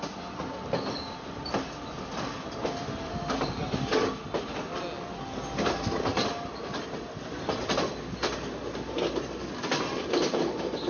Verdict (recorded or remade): recorded